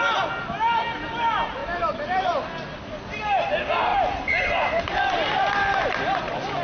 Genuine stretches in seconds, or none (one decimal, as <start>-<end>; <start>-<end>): 0.0-6.6